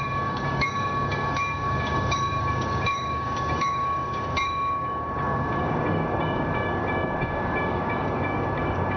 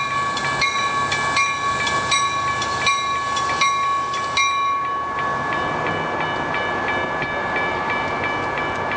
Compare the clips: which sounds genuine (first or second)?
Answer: second